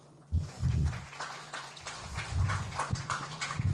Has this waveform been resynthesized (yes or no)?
yes